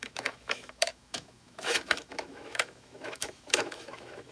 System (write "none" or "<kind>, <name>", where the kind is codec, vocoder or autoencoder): autoencoder, DAC-VAE